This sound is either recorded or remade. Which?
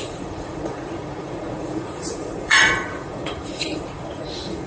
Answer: remade